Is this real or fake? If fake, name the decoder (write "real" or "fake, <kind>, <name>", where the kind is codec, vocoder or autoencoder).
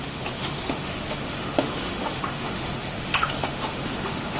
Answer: fake, autoencoder, DAC-VAE